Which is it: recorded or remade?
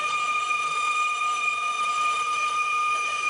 remade